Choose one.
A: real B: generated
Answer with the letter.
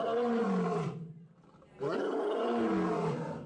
A